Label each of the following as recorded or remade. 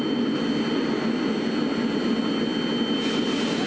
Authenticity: recorded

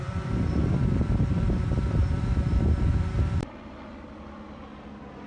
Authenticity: remade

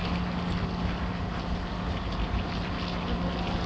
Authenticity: recorded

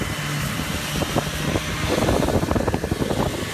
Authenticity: recorded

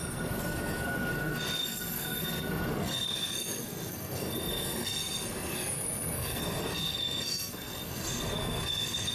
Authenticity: remade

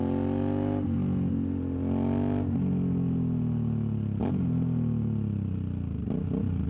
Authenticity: recorded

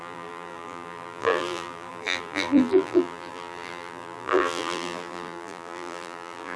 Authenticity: remade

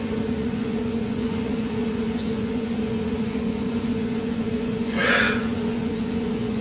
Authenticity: remade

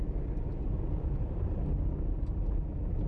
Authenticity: recorded